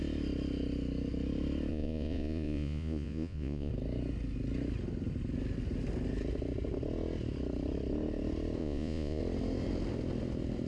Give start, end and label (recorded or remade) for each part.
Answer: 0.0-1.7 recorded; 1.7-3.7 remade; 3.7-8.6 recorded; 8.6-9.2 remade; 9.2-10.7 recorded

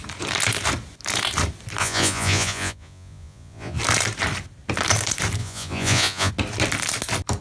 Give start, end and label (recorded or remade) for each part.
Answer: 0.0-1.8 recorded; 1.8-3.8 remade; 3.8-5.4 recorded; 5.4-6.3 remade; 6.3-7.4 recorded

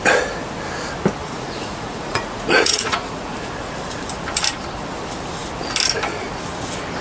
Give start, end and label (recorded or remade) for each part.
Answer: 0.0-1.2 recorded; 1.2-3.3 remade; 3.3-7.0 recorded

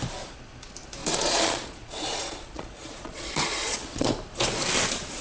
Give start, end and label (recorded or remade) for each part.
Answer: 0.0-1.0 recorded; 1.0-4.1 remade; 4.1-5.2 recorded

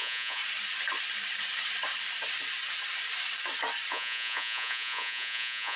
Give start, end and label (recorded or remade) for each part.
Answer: 0.0-0.4 remade; 0.4-3.9 recorded; 3.9-5.8 remade

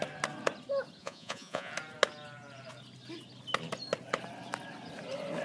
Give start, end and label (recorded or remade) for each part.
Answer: 0.0-1.0 recorded; 1.0-1.7 remade; 1.7-5.4 recorded

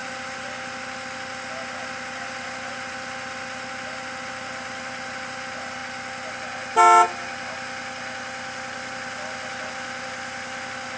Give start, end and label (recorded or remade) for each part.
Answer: 0.0-11.0 recorded